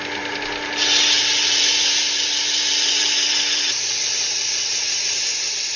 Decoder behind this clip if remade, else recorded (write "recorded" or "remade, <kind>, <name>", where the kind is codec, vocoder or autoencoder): recorded